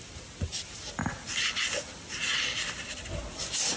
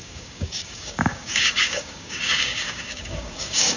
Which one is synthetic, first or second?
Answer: second